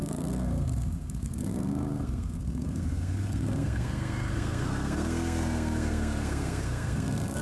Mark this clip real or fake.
fake